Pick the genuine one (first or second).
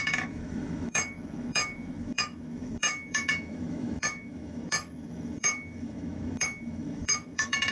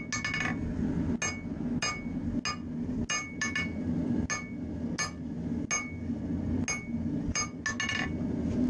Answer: second